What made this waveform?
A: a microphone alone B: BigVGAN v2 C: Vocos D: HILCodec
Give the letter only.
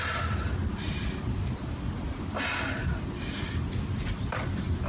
A